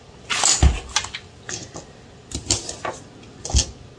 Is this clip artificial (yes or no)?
no